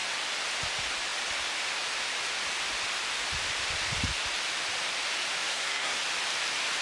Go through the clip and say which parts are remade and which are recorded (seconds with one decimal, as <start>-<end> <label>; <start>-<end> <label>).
0.0-5.5 recorded; 5.5-6.0 remade; 6.0-6.8 recorded